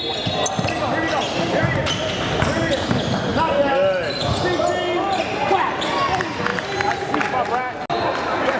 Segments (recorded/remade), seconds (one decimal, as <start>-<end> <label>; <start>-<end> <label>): 0.0-8.6 recorded